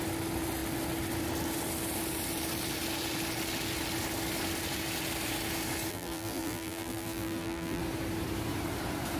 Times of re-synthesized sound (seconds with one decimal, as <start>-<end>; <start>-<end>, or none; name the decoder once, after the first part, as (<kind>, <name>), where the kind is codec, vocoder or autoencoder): 5.9-7.8 (vocoder, BigVGAN v2)